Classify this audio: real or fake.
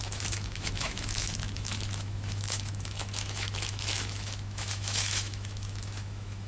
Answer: fake